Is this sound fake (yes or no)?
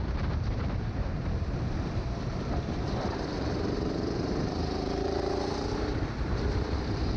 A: yes